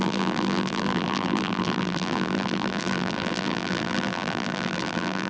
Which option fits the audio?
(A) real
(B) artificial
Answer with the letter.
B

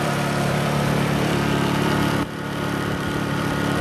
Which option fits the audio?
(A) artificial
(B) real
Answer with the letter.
A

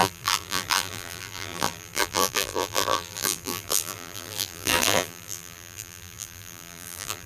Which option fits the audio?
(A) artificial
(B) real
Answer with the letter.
A